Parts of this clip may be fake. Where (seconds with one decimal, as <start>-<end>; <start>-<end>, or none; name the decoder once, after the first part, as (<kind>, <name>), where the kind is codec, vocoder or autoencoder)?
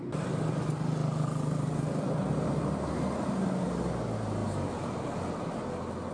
none